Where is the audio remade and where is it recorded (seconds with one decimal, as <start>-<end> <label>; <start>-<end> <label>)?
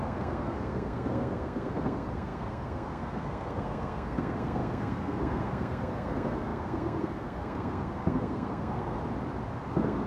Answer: 0.0-9.0 remade; 9.0-9.7 recorded; 9.7-10.1 remade